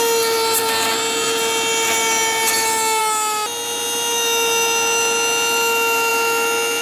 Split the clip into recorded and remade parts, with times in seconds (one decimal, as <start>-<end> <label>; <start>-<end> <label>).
0.0-6.8 recorded